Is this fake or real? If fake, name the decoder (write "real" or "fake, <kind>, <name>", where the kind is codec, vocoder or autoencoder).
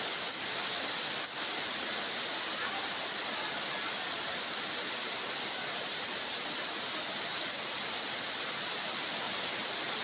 real